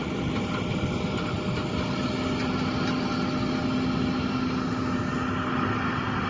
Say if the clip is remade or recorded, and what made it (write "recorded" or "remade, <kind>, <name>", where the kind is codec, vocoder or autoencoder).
recorded